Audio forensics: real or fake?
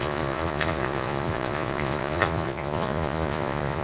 fake